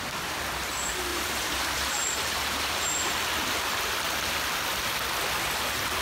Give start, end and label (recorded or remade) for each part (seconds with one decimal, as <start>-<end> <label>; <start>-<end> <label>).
0.0-1.1 recorded; 1.1-3.2 remade; 3.2-6.0 recorded